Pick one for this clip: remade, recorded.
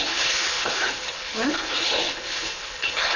remade